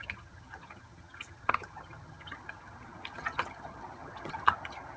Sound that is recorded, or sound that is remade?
remade